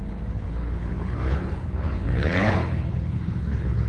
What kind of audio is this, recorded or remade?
remade